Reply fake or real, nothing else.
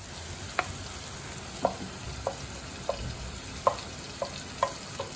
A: real